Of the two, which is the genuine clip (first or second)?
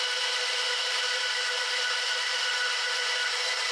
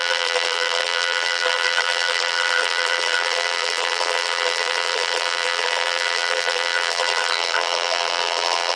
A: first